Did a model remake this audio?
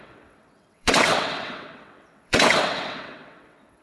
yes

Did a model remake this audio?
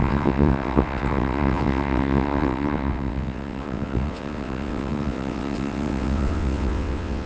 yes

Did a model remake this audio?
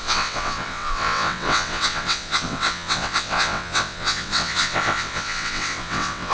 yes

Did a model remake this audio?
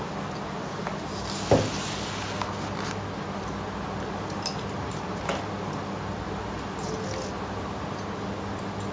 no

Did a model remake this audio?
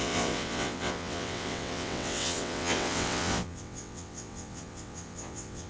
yes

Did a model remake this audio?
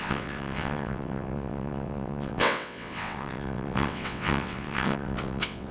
yes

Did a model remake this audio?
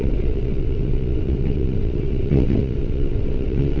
yes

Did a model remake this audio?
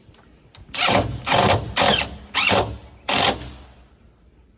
no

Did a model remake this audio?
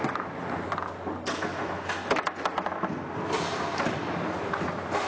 no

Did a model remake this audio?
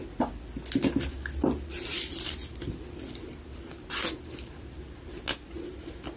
no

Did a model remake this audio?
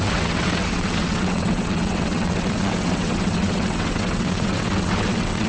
yes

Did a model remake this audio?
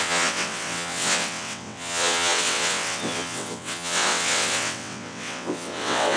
yes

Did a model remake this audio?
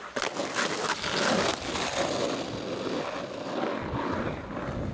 no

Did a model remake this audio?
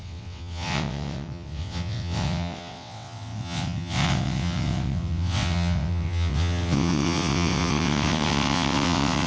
yes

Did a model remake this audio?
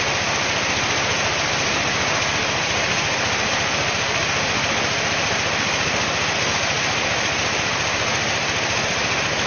no